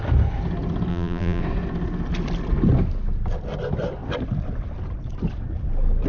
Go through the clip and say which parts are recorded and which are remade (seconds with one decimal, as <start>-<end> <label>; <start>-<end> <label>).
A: 0.0-0.9 recorded; 0.9-1.4 remade; 1.4-6.1 recorded